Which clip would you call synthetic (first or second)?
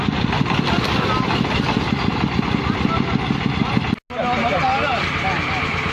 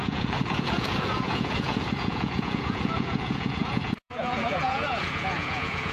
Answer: second